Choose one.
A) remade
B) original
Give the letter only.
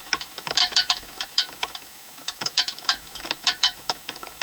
A